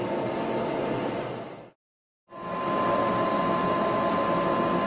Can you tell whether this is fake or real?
real